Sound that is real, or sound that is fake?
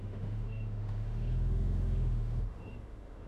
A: fake